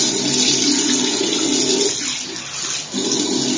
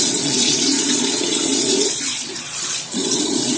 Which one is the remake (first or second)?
second